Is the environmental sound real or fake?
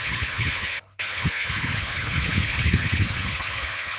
fake